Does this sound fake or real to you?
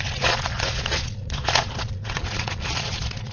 fake